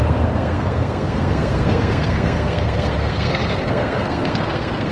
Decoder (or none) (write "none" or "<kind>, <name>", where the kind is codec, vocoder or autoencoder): codec, SNAC